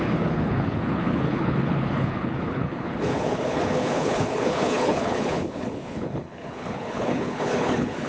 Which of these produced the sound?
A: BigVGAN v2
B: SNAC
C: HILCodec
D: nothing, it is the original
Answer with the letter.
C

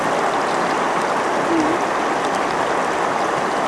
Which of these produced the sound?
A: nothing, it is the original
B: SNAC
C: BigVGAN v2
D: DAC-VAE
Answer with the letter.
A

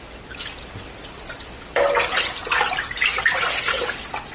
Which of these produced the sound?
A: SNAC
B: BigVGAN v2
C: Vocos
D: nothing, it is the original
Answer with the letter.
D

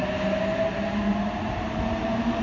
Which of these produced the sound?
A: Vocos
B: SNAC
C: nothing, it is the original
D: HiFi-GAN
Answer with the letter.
C